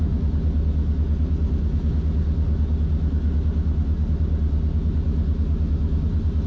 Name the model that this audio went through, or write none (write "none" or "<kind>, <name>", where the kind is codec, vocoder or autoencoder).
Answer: none